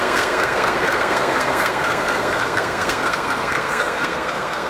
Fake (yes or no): yes